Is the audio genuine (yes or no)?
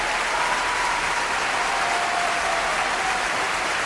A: yes